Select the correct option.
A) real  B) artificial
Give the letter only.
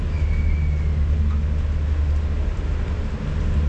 A